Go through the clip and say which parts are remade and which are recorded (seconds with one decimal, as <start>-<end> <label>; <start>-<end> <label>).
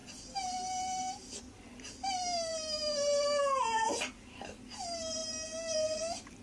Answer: 0.0-6.4 recorded